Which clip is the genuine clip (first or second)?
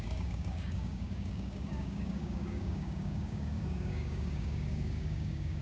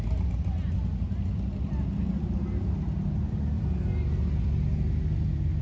second